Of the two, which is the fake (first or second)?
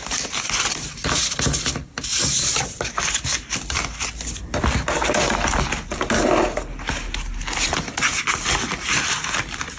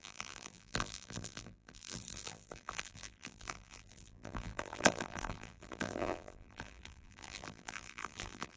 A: second